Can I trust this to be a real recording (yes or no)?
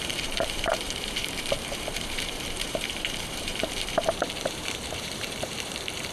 no